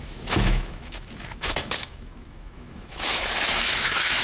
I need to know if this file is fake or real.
fake